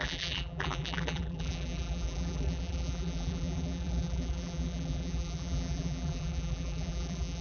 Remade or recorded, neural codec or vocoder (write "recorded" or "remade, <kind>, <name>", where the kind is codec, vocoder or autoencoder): remade, vocoder, BigVGAN v2